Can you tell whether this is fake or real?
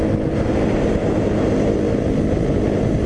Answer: real